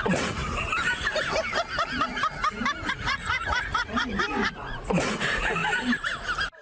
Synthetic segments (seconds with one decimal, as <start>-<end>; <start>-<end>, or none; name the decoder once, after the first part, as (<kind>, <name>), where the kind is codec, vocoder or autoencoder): 0.0-0.4 (vocoder, Vocos); 2.9-5.6